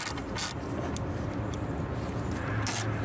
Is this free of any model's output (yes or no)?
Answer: yes